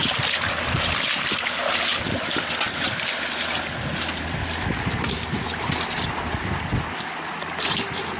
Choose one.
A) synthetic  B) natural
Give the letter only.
B